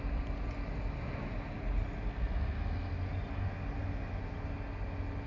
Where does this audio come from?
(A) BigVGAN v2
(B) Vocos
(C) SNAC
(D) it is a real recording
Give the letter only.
D